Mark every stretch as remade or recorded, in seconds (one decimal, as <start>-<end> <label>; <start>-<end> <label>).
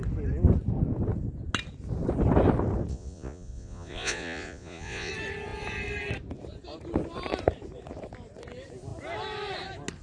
0.0-2.9 recorded; 2.9-5.1 remade; 5.1-10.0 recorded